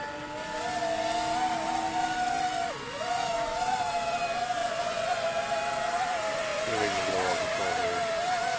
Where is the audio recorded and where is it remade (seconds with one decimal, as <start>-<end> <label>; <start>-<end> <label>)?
0.0-4.6 recorded; 4.6-5.5 remade; 5.5-8.6 recorded